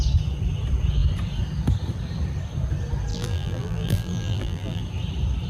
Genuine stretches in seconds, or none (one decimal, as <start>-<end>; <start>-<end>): 0.0-3.1; 4.8-5.5